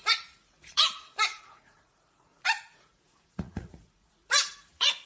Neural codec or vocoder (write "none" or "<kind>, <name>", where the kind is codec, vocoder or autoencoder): vocoder, Vocos